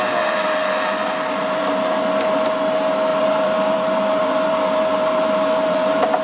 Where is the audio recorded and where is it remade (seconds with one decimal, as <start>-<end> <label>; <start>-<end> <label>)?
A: 0.0-0.6 recorded; 0.6-1.8 remade; 1.8-3.1 recorded; 3.1-6.2 remade